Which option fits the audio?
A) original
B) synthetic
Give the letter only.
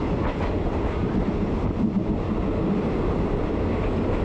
A